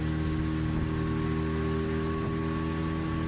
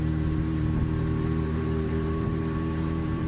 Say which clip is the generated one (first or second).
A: second